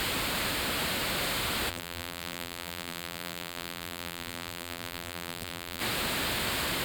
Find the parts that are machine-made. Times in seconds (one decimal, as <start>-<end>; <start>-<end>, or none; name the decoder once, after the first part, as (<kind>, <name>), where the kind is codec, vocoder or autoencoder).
1.7-5.8 (vocoder, BigVGAN v2)